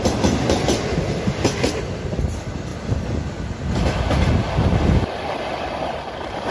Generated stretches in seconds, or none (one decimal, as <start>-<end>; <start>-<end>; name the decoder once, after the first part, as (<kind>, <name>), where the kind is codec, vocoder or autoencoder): none